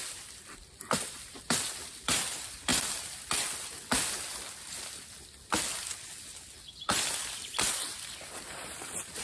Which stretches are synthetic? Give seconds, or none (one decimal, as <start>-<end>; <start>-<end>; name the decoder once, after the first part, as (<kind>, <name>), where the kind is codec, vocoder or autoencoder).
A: 0.0-2.7 (vocoder, BigVGAN v2); 6.4-9.2